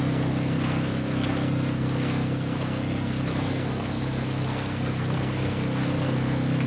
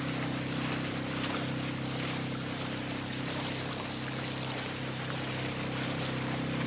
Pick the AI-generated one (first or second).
first